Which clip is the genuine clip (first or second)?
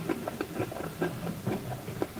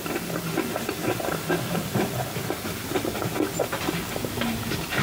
second